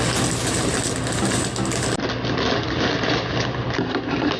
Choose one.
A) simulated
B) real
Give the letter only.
B